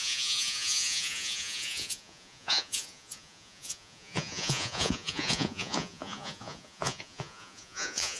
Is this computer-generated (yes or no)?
yes